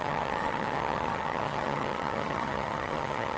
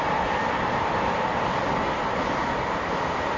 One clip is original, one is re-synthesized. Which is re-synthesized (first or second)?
first